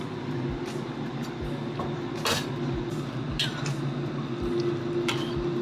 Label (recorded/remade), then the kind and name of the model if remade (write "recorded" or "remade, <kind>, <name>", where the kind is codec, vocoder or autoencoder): recorded